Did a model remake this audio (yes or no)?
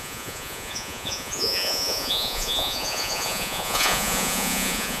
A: yes